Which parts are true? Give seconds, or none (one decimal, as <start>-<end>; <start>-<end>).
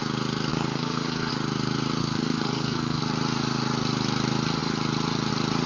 0.0-0.5; 1.3-2.0; 3.0-5.7